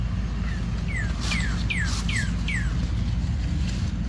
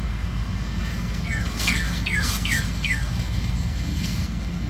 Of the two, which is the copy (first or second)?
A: second